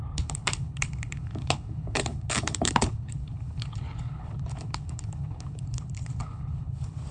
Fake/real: fake